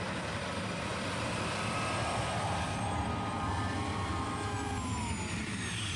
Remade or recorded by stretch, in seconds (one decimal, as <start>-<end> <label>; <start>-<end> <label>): 0.0-6.0 recorded